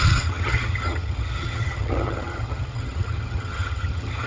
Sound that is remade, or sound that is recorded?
remade